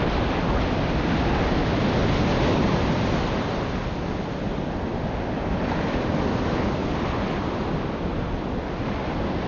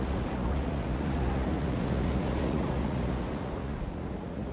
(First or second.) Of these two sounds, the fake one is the second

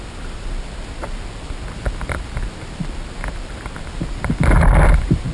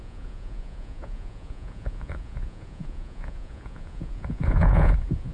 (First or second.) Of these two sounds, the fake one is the second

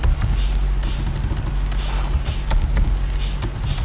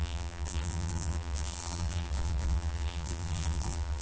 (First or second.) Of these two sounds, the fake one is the second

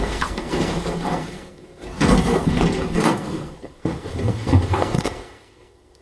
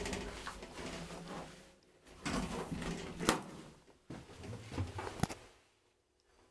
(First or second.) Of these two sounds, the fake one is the first